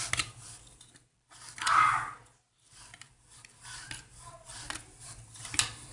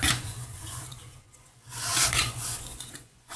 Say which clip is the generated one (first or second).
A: second